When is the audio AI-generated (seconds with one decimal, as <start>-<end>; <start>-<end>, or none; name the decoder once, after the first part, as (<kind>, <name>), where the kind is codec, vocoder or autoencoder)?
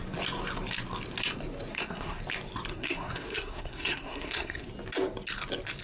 1.7-2.2 (codec, SNAC); 2.7-4.7